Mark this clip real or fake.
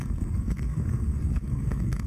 fake